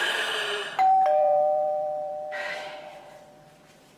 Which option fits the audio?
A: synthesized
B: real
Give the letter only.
A